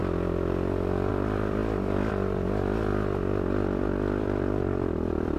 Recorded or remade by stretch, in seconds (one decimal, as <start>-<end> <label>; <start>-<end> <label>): 0.0-1.1 recorded; 1.1-1.6 remade; 1.6-2.1 recorded; 2.1-2.9 remade; 2.9-3.8 recorded; 3.8-5.4 remade